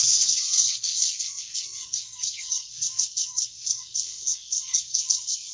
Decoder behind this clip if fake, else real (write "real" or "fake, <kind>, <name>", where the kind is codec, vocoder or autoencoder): fake, codec, SNAC